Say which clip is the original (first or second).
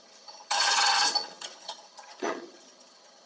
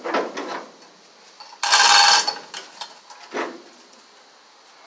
second